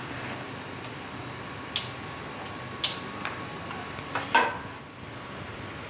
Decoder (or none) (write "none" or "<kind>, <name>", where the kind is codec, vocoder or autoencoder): none